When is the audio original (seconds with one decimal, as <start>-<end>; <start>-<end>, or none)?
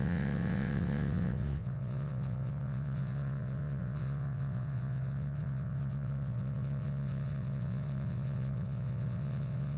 none